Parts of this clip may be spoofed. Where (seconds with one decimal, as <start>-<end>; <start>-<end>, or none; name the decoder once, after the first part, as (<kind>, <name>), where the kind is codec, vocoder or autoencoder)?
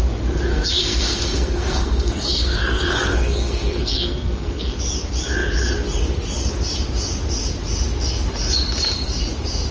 0.5-4.8 (codec, SNAC)